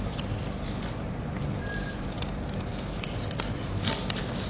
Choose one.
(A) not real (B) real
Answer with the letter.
A